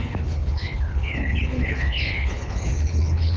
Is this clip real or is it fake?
fake